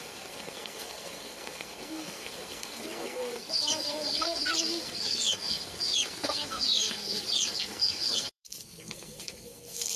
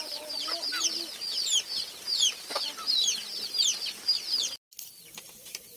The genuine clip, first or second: second